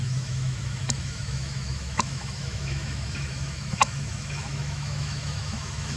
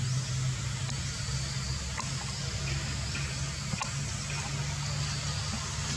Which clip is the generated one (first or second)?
first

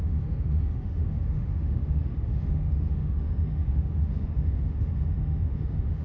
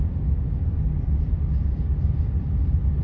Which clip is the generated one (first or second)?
first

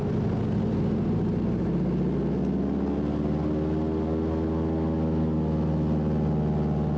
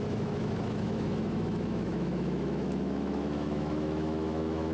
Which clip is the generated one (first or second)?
second